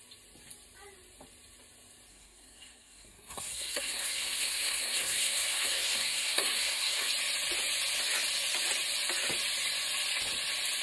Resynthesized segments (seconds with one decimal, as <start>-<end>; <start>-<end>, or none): 2.1-7.1